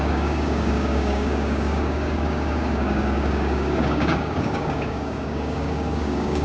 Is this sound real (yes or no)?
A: no